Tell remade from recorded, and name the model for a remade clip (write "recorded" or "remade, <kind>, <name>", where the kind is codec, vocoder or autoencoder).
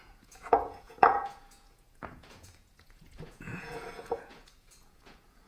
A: remade, vocoder, Vocos